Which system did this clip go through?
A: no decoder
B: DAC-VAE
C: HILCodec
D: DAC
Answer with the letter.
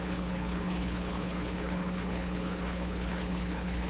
C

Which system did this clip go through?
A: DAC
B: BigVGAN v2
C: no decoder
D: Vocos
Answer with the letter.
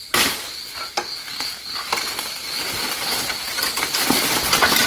C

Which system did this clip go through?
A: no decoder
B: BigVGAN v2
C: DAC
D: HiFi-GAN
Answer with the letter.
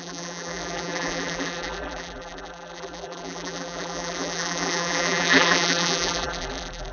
B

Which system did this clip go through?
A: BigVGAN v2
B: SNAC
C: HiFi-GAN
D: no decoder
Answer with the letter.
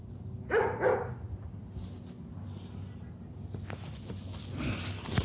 D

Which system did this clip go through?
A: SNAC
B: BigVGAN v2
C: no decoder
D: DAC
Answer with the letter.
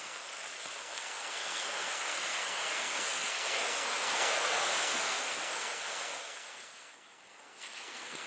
A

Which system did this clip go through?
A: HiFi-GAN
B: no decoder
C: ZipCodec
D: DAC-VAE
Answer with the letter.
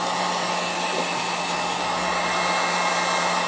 B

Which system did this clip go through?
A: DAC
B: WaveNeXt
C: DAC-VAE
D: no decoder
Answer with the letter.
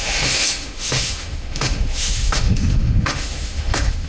C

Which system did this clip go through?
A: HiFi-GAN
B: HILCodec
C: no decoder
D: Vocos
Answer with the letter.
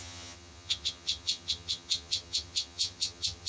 A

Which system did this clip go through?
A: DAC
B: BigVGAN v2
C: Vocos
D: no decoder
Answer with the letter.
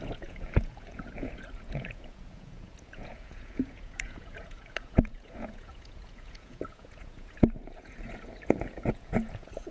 C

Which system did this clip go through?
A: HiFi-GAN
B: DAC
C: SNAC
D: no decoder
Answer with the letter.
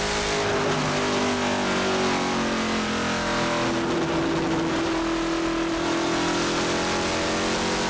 D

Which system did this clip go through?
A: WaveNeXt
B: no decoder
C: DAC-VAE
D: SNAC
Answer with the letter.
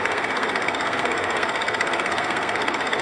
D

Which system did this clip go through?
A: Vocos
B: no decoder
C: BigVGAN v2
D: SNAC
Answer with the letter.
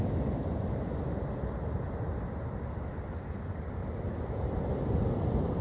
B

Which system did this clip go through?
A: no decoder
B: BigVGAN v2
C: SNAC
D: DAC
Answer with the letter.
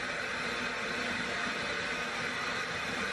A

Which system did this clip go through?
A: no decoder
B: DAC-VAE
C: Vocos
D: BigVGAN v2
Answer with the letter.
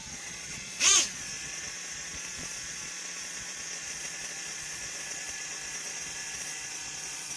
C